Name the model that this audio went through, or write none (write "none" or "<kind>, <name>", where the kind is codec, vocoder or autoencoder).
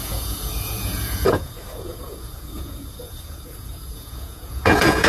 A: vocoder, Vocos